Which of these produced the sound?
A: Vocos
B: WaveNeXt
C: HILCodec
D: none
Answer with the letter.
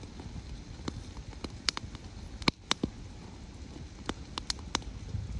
D